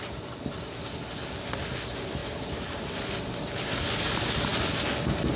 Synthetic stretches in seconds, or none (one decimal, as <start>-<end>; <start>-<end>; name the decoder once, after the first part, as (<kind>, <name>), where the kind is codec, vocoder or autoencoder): 2.2-3.4 (vocoder, BigVGAN v2)